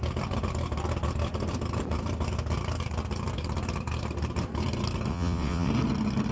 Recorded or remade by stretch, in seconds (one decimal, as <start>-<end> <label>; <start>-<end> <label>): 0.0-5.1 recorded; 5.1-5.7 remade; 5.7-6.3 recorded